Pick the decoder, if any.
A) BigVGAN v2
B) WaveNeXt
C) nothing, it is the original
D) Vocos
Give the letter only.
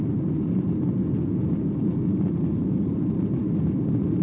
C